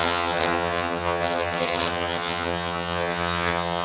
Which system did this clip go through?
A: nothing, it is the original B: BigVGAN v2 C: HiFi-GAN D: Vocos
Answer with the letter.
C